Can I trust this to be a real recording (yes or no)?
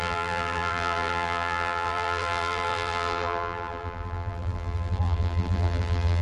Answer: no